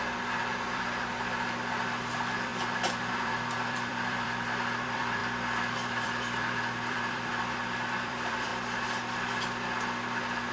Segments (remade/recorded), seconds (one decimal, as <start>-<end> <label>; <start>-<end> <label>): 0.0-2.5 remade; 2.5-3.1 recorded; 3.1-8.5 remade; 8.5-10.5 recorded